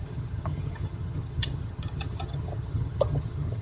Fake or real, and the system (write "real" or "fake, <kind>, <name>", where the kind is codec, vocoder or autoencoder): fake, vocoder, HiFi-GAN